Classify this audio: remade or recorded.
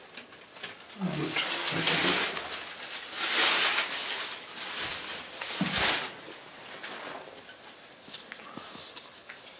recorded